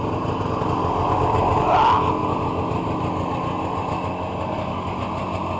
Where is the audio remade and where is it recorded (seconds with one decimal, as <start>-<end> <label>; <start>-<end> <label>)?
0.0-2.2 recorded; 2.2-5.6 remade